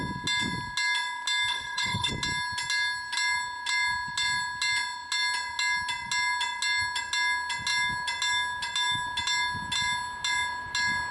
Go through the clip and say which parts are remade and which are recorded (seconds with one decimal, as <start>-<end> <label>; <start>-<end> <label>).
0.0-1.5 recorded; 1.5-2.1 remade; 2.1-11.1 recorded